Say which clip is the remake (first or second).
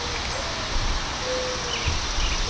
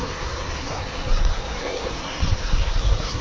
second